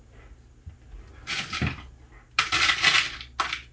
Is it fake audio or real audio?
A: real